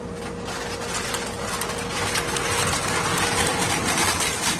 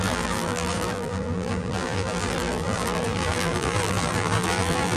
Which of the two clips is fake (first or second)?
second